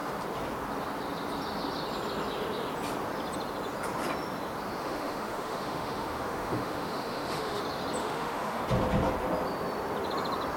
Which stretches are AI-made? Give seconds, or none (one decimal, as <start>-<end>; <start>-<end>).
4.8-7.6; 8.0-8.6